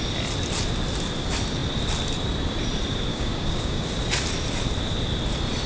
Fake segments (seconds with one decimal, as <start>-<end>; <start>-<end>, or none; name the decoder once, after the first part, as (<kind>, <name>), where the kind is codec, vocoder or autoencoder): 3.1-3.9 (codec, DAC)